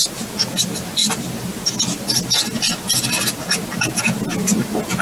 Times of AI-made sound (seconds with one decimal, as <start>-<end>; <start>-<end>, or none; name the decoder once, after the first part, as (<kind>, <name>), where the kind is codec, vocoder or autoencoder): none